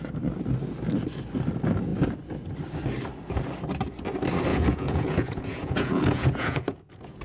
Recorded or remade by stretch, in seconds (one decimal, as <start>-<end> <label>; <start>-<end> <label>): 0.0-4.5 recorded; 4.5-7.2 remade